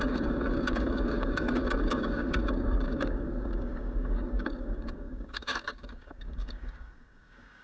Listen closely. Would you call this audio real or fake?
fake